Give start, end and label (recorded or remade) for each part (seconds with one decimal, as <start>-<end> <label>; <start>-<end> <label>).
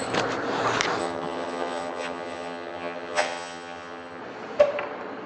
0.0-1.0 recorded; 1.0-4.2 remade; 4.2-5.3 recorded